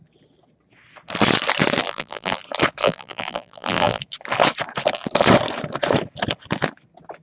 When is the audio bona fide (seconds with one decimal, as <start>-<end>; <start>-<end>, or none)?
0.0-1.8; 2.4-2.8; 4.0-7.2